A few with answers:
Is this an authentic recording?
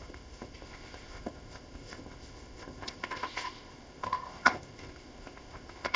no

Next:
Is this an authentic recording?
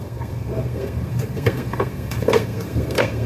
no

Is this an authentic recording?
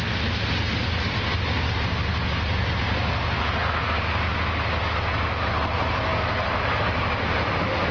yes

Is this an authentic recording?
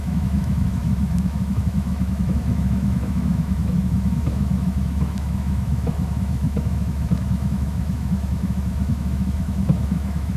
no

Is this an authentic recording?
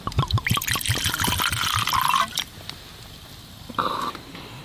yes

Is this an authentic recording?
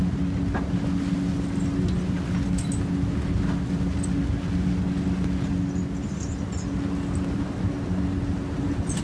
yes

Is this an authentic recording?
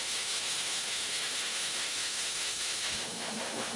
no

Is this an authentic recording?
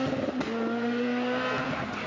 yes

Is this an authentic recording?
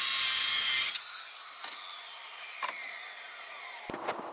yes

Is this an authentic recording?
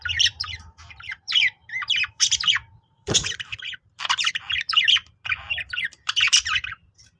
no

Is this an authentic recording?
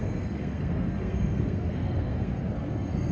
no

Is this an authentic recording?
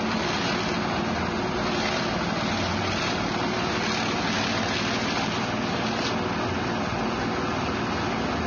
yes